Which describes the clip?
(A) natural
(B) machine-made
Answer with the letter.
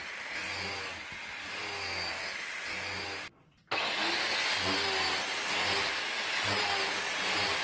A